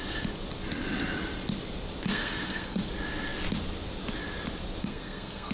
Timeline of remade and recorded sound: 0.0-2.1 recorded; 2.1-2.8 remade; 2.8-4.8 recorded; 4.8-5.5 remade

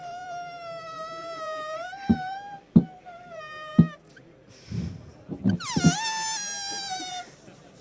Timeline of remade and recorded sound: 0.0-3.7 remade; 3.7-6.7 recorded; 6.7-7.8 remade